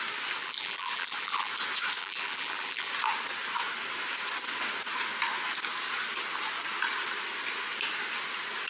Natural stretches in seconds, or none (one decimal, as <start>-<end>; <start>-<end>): 0.0-0.4; 1.5-2.0; 2.9-8.7